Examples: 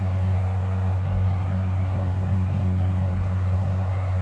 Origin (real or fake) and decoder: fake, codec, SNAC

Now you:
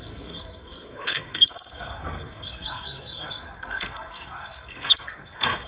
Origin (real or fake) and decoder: fake, codec, SNAC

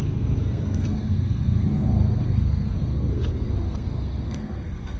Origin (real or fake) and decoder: fake, codec, SNAC